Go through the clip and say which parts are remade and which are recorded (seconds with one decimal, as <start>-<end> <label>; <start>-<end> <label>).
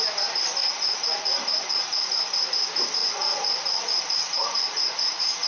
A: 0.0-0.6 recorded; 0.6-2.1 remade; 2.1-3.0 recorded; 3.0-5.5 remade